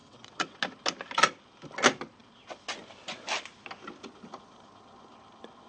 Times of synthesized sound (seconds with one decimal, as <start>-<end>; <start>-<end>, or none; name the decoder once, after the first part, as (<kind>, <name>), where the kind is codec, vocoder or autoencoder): 0.0-0.6 (vocoder, WaveNeXt)